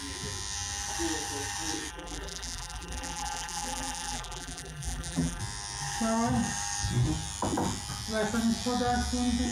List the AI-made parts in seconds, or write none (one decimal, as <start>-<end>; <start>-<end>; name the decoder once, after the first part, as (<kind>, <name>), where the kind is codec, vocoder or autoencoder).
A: 1.9-5.4 (vocoder, BigVGAN v2)